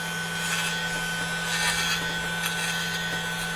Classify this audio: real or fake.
real